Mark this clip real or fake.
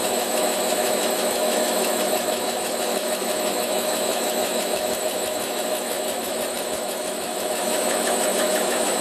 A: fake